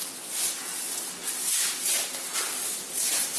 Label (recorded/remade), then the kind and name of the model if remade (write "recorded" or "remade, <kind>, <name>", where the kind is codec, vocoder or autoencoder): recorded